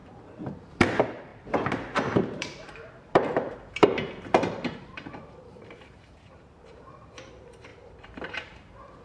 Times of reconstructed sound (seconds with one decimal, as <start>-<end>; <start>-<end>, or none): 0.0-9.0